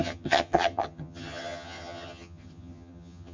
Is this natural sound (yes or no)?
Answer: no